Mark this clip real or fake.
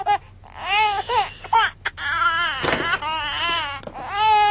real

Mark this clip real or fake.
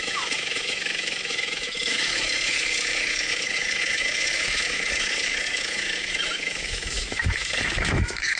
fake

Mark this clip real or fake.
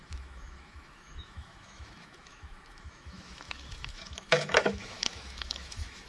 fake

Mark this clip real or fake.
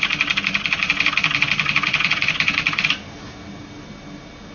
real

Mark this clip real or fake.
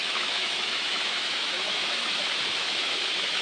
fake